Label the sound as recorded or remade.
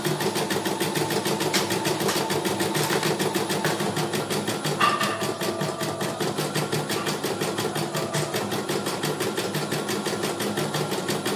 recorded